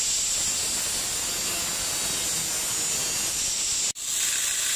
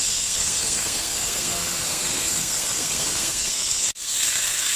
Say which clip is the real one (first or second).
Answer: first